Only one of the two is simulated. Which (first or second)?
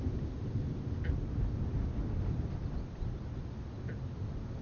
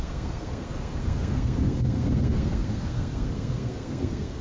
second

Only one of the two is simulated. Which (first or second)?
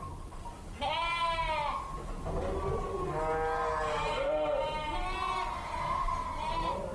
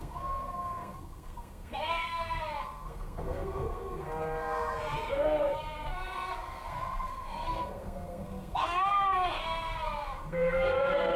second